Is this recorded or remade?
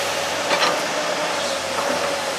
recorded